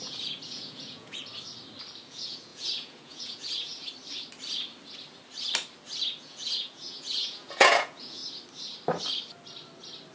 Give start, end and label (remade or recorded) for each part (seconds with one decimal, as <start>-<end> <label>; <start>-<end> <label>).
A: 0.0-1.2 remade; 1.2-2.0 recorded; 2.0-3.7 remade; 3.7-6.2 recorded; 6.2-8.2 remade; 8.2-10.1 recorded